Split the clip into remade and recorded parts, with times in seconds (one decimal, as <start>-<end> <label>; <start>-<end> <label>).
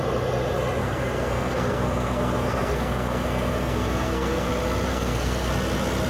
0.0-0.8 recorded; 0.8-4.5 remade; 4.5-4.9 recorded; 4.9-5.5 remade; 5.5-6.1 recorded